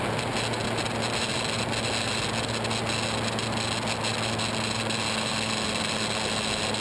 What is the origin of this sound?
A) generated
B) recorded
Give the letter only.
B